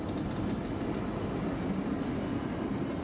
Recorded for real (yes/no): yes